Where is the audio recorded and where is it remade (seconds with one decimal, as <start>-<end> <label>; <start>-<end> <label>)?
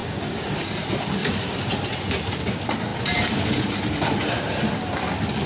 0.0-0.5 remade; 0.5-5.5 recorded